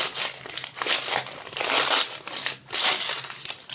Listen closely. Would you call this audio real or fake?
real